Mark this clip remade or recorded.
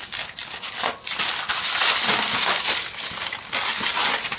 recorded